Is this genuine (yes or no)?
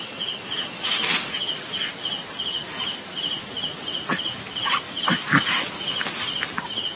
yes